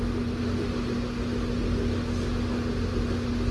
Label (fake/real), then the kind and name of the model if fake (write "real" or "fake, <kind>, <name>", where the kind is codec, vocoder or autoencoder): real